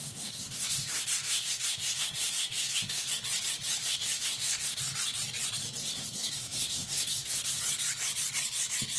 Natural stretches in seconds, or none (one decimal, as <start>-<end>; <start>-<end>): 3.1-3.8; 4.8-5.8; 7.6-9.0